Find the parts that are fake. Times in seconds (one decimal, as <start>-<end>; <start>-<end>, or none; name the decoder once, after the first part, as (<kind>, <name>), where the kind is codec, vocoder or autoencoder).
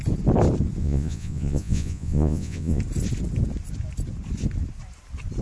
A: 0.8-2.8 (vocoder, Vocos)